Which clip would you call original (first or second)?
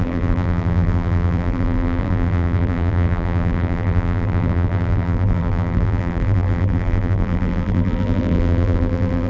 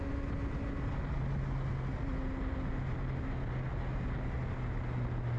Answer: second